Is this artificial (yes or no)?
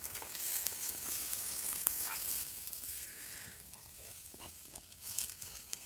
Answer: yes